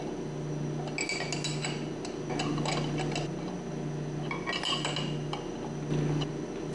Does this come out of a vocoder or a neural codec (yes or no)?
no